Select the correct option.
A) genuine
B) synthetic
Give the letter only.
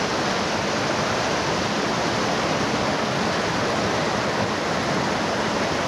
A